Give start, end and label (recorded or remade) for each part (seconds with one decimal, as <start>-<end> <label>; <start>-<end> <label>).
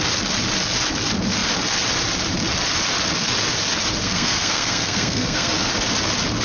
0.0-4.0 recorded; 4.0-5.7 remade; 5.7-6.4 recorded